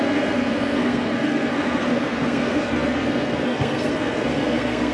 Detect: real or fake fake